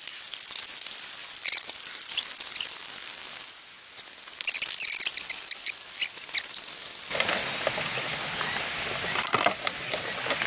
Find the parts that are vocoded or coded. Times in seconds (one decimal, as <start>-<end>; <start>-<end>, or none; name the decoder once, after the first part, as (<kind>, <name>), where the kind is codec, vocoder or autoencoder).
1.2-2.2 (vocoder, BigVGAN v2)